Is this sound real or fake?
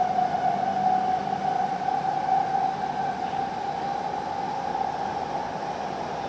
real